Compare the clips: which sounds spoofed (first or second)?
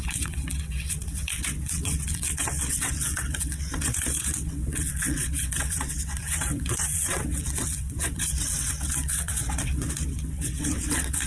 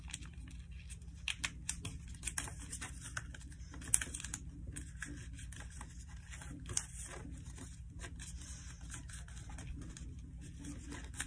first